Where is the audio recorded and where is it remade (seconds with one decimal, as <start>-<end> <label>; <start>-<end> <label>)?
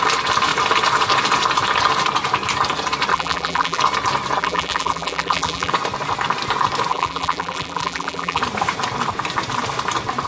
0.0-3.1 recorded; 3.1-3.8 remade; 3.8-4.4 recorded; 4.4-5.7 remade; 5.7-6.9 recorded; 6.9-8.4 remade; 8.4-10.3 recorded